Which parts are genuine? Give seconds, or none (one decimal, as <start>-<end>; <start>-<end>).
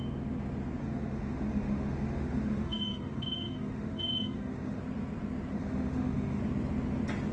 0.0-0.8; 4.8-5.5; 6.4-7.3